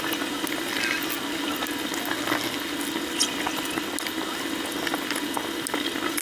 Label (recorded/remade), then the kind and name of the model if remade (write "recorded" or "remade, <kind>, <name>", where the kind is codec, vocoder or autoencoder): recorded